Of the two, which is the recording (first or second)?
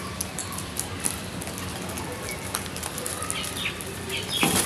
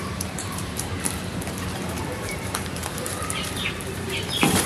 first